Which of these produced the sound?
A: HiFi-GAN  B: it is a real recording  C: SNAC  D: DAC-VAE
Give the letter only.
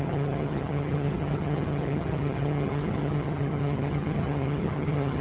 A